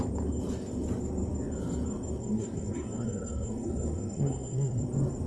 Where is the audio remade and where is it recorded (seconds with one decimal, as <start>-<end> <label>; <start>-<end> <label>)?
0.0-2.2 recorded; 2.2-4.8 remade; 4.8-5.3 recorded